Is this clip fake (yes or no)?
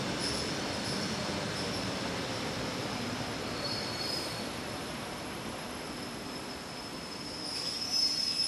yes